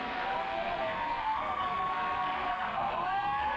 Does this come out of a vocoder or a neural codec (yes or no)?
yes